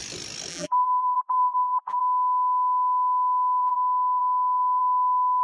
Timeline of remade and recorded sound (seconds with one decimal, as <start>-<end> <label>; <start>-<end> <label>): 0.0-0.5 recorded; 0.5-2.0 remade; 2.0-5.4 recorded